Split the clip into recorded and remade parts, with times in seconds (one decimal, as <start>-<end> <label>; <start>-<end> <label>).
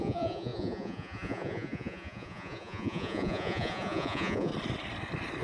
0.0-4.5 remade; 4.5-5.4 recorded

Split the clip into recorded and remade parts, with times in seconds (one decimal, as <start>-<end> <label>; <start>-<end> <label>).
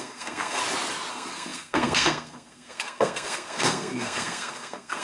0.0-0.6 remade; 0.6-1.1 recorded; 1.1-5.0 remade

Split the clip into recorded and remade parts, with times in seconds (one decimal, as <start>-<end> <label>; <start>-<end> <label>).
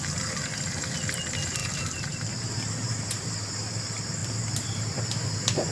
0.0-1.6 recorded; 1.6-3.8 remade; 3.8-4.2 recorded; 4.2-5.0 remade; 5.0-5.7 recorded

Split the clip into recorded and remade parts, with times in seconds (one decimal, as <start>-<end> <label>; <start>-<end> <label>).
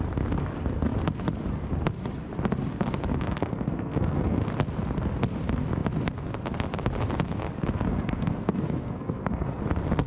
0.0-3.1 recorded; 3.1-4.4 remade; 4.4-7.9 recorded; 7.9-9.6 remade; 9.6-10.1 recorded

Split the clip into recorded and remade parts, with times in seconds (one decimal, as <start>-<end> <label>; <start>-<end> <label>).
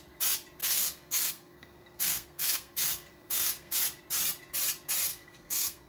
0.0-0.6 recorded; 0.6-3.8 remade; 3.8-5.1 recorded; 5.1-5.9 remade